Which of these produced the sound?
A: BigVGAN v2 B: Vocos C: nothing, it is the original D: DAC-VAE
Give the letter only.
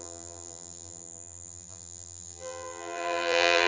A